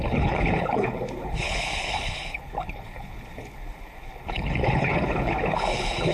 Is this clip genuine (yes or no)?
no